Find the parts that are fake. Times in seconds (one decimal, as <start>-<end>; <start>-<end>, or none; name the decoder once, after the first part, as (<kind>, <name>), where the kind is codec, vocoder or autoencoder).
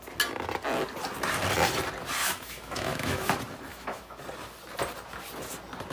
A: 2.2-3.3 (autoencoder, DAC-VAE); 3.7-4.2